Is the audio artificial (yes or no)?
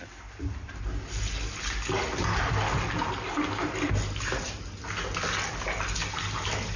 no